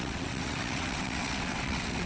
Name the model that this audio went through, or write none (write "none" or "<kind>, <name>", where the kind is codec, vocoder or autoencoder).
vocoder, WaveNeXt